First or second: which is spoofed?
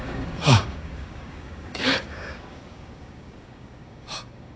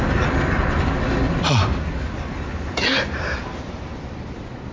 first